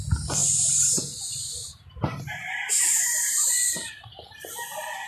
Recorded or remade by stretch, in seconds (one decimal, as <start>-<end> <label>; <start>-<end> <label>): 0.0-0.4 recorded; 0.4-3.5 remade; 3.5-5.1 recorded